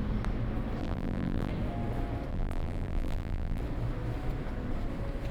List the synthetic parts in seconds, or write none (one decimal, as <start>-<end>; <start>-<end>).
0.8-1.5; 2.3-3.6